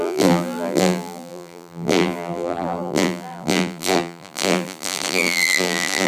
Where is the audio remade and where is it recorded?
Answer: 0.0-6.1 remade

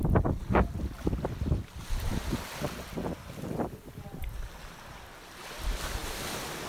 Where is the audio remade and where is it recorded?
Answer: 0.0-6.7 recorded

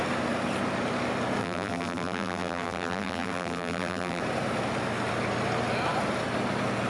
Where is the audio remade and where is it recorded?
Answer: 0.0-1.4 recorded; 1.4-4.2 remade; 4.2-6.9 recorded

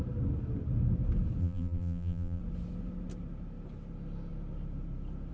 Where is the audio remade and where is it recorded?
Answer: 0.0-1.4 recorded; 1.4-2.4 remade; 2.4-5.3 recorded

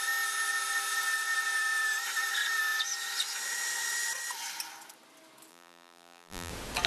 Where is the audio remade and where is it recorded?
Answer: 0.0-5.5 recorded; 5.5-6.5 remade; 6.5-6.9 recorded

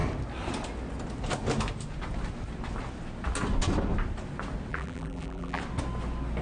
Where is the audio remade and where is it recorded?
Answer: 0.0-4.7 recorded; 4.7-5.6 remade; 5.6-6.4 recorded